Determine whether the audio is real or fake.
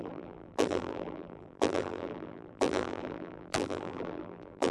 fake